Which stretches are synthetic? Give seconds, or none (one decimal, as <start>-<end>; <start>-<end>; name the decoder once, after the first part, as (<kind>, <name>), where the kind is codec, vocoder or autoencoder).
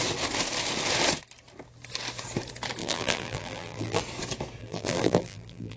2.8-4.0 (vocoder, BigVGAN v2); 4.6-5.8